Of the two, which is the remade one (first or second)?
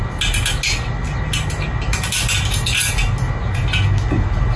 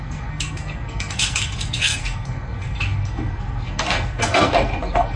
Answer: second